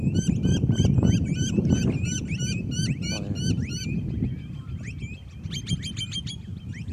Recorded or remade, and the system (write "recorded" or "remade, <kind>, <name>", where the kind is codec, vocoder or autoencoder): recorded